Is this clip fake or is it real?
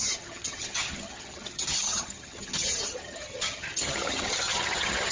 fake